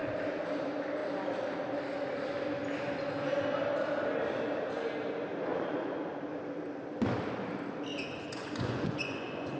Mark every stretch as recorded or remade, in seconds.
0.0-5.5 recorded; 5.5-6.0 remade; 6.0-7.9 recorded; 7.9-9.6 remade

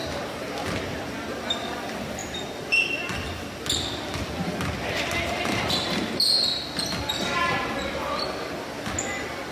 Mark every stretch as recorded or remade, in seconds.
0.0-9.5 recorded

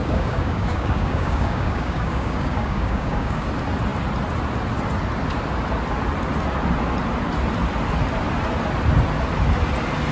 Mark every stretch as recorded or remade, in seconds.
0.0-3.5 remade; 3.5-10.1 recorded

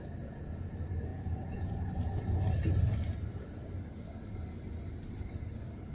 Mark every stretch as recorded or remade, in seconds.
0.0-1.1 recorded; 1.1-1.7 remade; 1.7-5.9 recorded

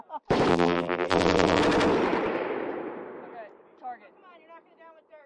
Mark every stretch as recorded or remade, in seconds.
0.0-0.5 recorded; 0.5-1.6 remade; 1.6-5.3 recorded